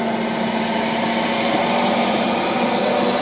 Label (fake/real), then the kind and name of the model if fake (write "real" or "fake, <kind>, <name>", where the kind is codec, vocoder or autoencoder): real